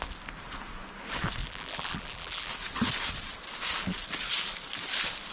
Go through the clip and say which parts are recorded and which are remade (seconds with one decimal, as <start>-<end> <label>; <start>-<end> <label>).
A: 0.0-1.4 recorded; 1.4-2.5 remade; 2.5-5.3 recorded